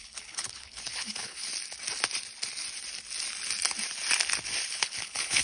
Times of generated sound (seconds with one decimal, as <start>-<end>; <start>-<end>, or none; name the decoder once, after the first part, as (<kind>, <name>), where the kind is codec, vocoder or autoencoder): 0.0-1.5 (codec, HILCodec); 4.7-5.4